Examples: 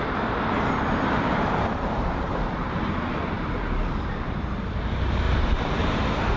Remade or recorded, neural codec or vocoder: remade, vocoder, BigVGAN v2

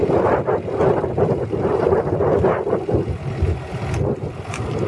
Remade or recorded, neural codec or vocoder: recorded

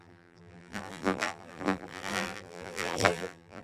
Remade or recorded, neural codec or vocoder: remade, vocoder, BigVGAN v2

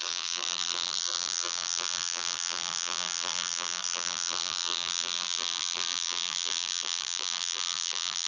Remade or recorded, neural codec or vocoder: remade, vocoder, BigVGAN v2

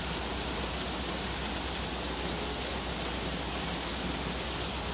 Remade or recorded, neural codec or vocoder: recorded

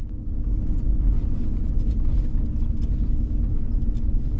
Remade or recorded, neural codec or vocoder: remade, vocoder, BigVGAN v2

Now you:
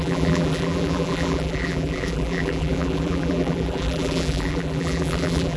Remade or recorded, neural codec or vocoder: remade, vocoder, BigVGAN v2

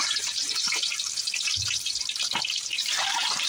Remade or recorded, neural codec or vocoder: remade, vocoder, BigVGAN v2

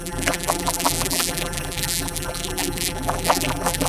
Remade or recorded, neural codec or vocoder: remade, vocoder, BigVGAN v2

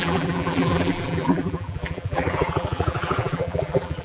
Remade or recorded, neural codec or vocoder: remade, vocoder, BigVGAN v2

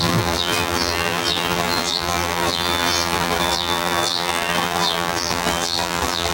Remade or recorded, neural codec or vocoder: remade, vocoder, BigVGAN v2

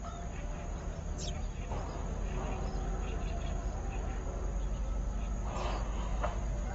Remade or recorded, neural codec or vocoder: recorded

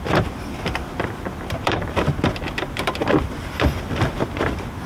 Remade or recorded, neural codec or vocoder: remade, vocoder, BigVGAN v2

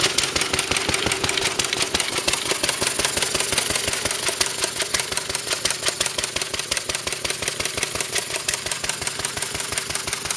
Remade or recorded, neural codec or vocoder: recorded